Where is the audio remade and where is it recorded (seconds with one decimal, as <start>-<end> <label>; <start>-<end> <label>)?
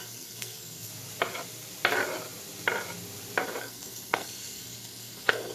0.0-0.9 remade; 0.9-3.6 recorded; 3.6-5.5 remade